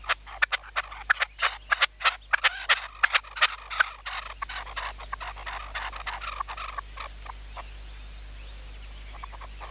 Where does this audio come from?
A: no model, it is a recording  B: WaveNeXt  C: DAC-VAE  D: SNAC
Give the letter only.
A